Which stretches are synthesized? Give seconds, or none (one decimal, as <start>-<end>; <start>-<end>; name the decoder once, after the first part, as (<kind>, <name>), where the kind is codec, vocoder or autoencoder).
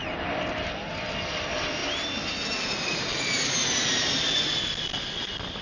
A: none